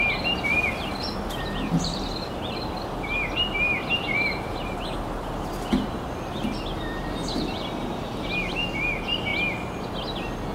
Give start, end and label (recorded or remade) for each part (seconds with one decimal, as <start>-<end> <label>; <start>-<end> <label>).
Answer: 0.0-10.5 recorded